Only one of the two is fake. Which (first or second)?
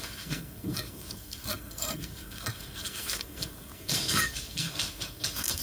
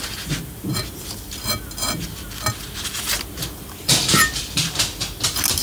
first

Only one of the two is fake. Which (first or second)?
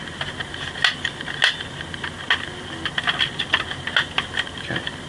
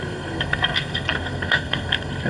second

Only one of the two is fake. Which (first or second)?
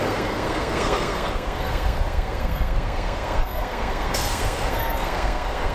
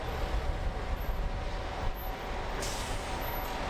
first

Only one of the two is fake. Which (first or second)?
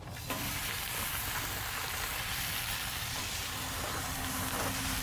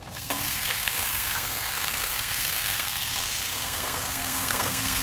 second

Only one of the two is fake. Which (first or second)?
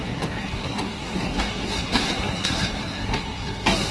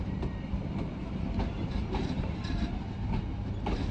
first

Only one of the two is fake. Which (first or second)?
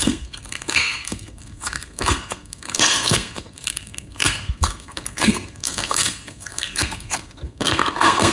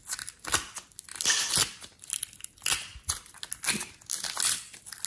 first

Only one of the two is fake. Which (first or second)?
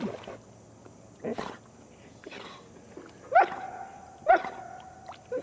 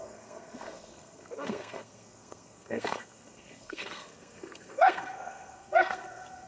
second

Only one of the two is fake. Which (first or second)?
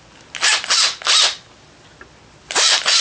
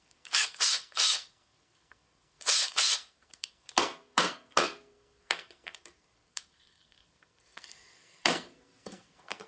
second